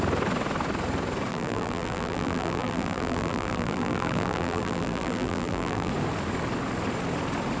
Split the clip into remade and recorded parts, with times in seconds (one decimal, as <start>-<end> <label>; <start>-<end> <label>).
0.0-1.3 recorded; 1.3-5.9 remade; 5.9-7.6 recorded